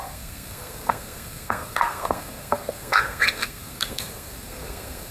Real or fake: fake